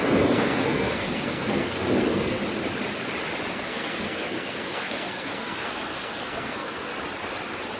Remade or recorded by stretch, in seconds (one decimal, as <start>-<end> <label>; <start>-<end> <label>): 0.0-2.4 remade; 2.4-3.5 recorded; 3.5-6.9 remade; 6.9-7.8 recorded